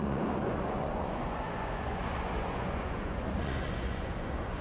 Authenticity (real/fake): fake